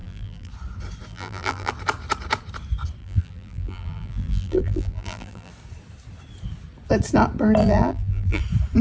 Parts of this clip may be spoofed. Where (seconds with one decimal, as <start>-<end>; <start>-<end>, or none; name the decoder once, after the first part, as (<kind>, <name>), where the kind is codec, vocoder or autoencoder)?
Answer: 0.0-0.5 (vocoder, BigVGAN v2); 1.1-1.7; 3.0-5.5; 7.6-8.4